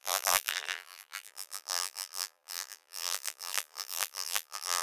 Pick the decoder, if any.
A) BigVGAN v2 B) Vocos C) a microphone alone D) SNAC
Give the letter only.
A